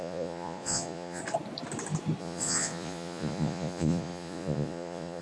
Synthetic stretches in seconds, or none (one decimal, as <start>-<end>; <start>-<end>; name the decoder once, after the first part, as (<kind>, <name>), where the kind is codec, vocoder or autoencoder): 0.0-1.2 (vocoder, Vocos); 2.2-5.2